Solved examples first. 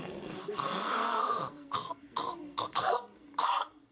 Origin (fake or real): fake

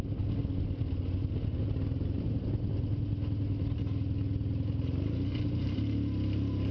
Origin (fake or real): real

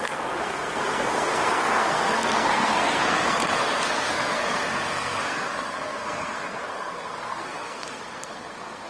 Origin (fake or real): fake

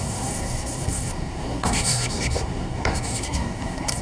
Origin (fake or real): fake